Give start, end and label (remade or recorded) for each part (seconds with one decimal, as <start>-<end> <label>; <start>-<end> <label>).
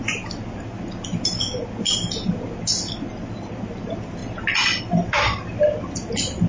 0.0-6.5 recorded